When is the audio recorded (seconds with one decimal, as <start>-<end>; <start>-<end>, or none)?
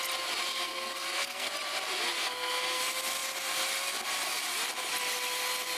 0.0-0.5; 1.5-2.2; 2.8-5.8